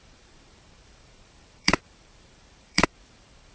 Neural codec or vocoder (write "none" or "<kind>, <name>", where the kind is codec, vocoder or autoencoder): vocoder, BigVGAN v2